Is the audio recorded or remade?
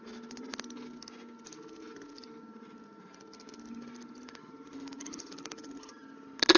recorded